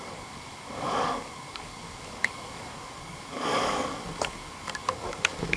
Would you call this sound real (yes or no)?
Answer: no